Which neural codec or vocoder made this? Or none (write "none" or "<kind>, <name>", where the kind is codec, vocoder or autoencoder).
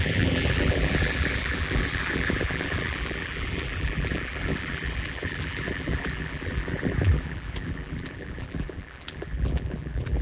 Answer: vocoder, BigVGAN v2